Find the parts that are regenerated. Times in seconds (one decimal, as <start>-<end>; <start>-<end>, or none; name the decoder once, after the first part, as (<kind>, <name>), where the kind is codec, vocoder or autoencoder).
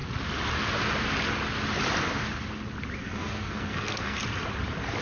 3.0-4.2 (codec, SNAC)